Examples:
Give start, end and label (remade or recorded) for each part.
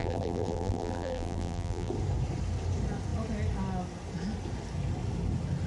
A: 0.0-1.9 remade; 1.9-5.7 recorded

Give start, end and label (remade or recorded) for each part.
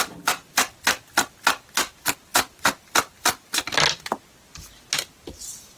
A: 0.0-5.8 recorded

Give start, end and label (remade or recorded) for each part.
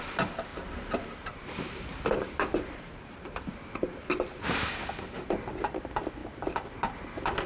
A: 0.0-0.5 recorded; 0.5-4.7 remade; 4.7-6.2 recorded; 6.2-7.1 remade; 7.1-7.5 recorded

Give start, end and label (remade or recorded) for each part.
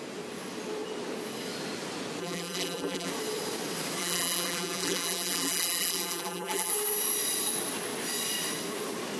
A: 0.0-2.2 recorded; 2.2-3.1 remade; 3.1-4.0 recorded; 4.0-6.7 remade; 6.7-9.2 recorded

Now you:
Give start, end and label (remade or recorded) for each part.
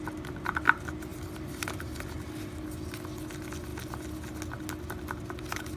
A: 0.0-1.1 recorded; 1.1-1.9 remade; 1.9-5.8 recorded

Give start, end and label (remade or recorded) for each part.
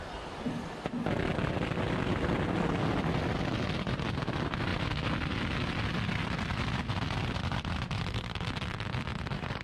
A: 0.0-9.6 recorded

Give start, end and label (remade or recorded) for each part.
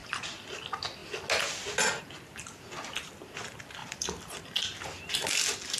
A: 0.0-0.6 remade; 0.6-3.8 recorded; 3.8-4.4 remade; 4.4-5.8 recorded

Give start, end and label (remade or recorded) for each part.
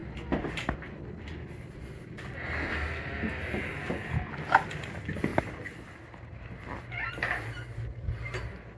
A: 0.0-8.8 recorded